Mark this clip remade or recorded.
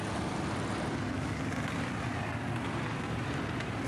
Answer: recorded